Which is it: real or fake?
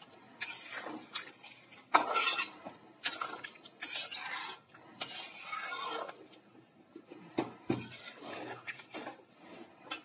real